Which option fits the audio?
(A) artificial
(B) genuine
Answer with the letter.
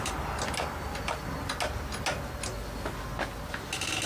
B